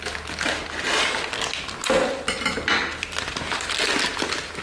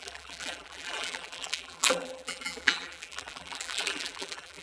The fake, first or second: second